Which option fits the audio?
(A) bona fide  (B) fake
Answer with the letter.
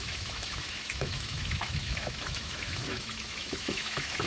B